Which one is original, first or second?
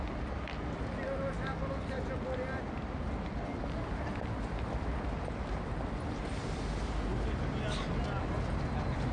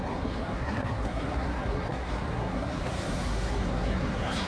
first